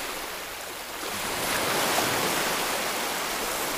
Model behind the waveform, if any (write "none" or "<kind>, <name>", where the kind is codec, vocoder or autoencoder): none